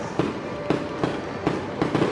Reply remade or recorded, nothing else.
recorded